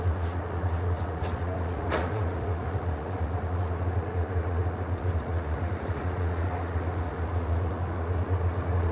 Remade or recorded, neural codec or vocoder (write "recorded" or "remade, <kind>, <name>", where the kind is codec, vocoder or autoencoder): remade, vocoder, Vocos